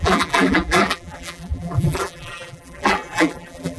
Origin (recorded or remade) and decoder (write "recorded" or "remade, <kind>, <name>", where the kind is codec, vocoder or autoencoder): remade, vocoder, BigVGAN v2